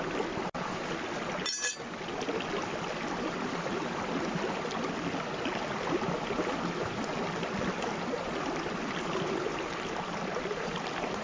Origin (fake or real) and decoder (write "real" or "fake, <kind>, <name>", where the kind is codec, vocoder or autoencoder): real